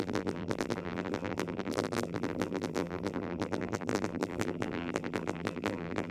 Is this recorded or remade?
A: remade